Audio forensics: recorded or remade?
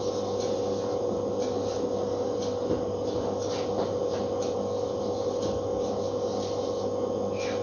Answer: recorded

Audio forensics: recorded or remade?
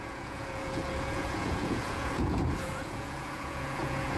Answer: remade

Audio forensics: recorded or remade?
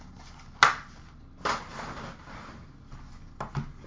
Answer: recorded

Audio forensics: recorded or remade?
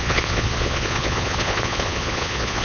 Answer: remade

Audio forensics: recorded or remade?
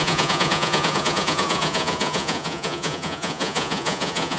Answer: remade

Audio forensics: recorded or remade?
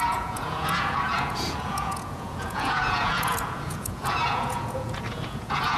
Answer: remade